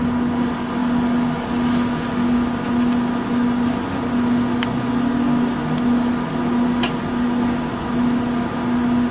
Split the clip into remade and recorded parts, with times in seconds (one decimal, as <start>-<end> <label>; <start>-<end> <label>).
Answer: 0.0-9.1 recorded